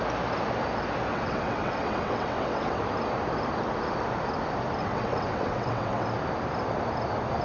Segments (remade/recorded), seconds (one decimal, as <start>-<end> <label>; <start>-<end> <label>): 0.0-1.1 recorded; 1.1-2.8 remade; 2.8-4.8 recorded; 4.8-6.1 remade; 6.1-7.4 recorded